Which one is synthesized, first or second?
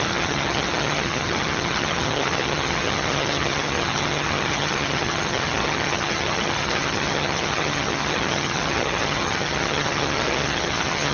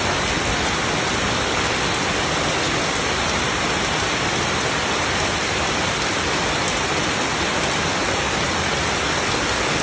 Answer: first